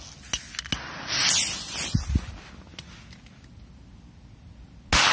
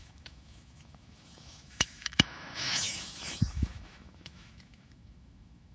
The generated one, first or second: second